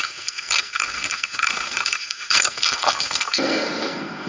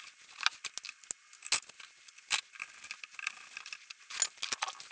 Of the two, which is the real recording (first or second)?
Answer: second